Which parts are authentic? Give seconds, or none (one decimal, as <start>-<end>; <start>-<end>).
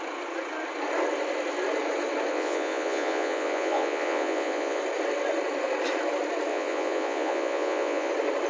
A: 0.0-2.3; 4.8-6.5; 8.1-8.5